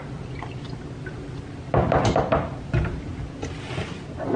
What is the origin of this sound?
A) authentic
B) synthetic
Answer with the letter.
A